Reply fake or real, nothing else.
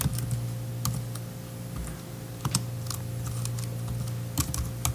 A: real